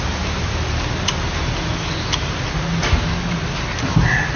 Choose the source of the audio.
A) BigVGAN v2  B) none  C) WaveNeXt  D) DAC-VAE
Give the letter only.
B